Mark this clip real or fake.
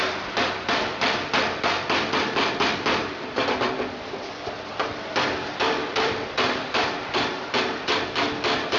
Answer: fake